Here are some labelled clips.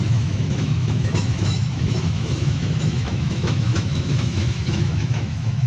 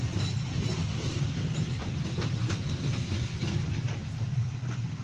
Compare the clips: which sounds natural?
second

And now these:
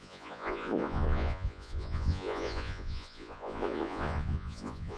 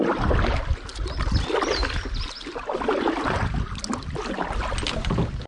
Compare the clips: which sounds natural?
second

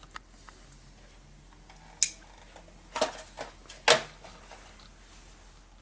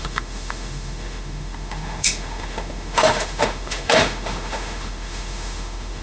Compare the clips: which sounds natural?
first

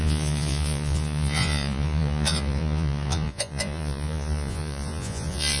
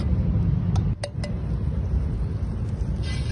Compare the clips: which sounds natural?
second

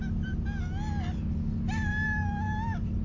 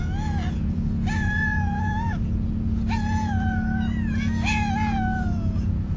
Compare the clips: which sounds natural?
first